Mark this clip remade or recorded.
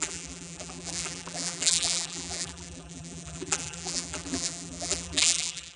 remade